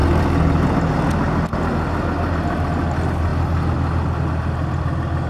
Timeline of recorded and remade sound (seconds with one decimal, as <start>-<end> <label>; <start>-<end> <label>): 0.0-5.3 recorded